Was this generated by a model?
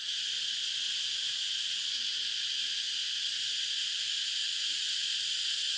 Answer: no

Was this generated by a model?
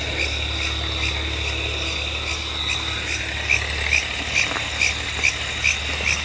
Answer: no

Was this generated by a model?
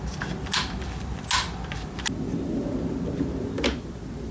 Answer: no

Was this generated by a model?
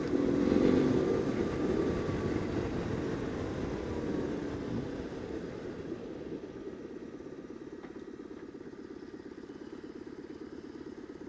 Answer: no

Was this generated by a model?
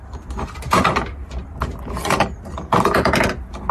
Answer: yes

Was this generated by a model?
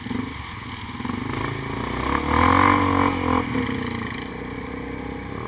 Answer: no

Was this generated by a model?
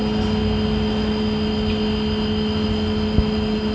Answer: no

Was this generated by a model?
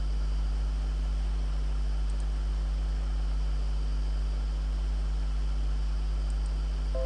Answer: no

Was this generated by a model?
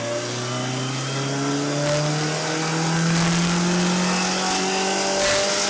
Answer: no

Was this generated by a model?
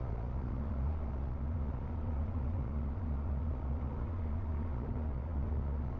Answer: yes